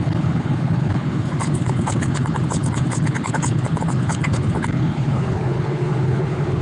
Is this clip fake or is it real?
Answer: fake